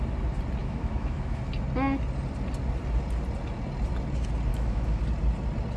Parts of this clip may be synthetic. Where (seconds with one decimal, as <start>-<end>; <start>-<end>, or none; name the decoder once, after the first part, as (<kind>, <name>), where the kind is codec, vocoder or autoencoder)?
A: 0.6-1.4 (autoencoder, DAC-VAE); 4.5-5.0